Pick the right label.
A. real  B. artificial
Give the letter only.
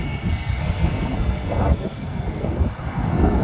B